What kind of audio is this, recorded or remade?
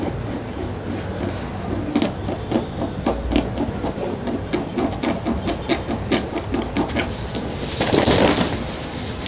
recorded